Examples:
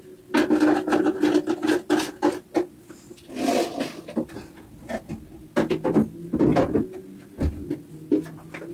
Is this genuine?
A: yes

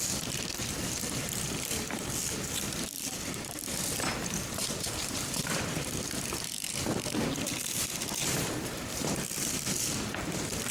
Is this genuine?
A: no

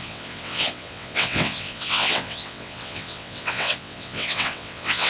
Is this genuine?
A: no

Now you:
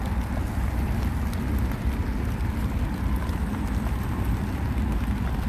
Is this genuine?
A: yes